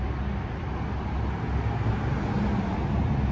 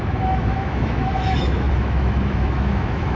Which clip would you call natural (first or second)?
first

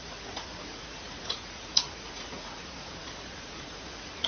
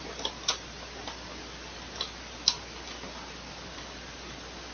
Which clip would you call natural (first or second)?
second